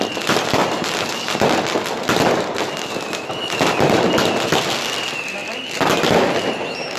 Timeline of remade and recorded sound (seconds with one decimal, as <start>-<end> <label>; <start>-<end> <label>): 0.0-7.0 recorded